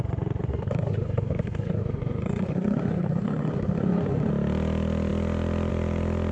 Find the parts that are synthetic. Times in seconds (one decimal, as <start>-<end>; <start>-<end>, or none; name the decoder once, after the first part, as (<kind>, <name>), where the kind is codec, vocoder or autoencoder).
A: 0.5-4.3 (codec, SNAC)